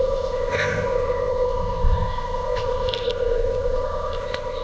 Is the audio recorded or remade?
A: remade